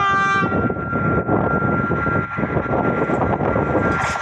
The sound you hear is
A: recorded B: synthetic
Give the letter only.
A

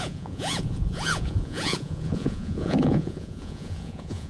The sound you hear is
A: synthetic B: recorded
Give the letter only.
A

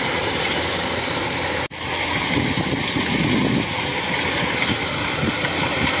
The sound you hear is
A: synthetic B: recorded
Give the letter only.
B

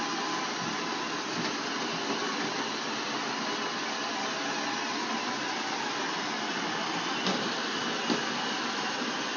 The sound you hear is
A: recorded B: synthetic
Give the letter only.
A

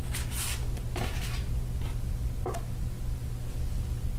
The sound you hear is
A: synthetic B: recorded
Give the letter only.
B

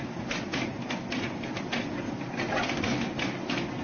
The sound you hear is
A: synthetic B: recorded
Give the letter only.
B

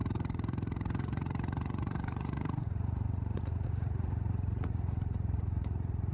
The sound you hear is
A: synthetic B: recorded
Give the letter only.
A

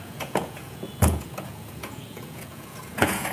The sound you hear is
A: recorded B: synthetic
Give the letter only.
B